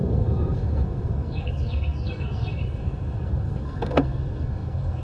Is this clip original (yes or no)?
no